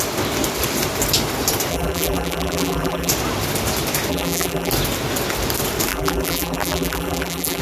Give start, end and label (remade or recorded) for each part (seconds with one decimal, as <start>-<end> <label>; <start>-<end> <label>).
0.0-1.7 recorded; 1.7-3.1 remade; 3.1-4.1 recorded; 4.1-4.7 remade; 4.7-5.9 recorded; 5.9-7.6 remade